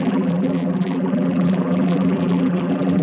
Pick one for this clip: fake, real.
fake